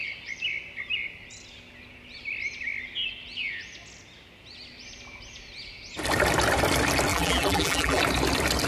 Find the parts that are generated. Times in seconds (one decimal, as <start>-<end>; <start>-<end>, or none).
7.1-8.0